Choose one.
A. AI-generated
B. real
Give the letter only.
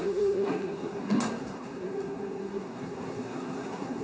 A